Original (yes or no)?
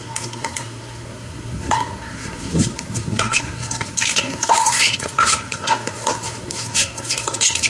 no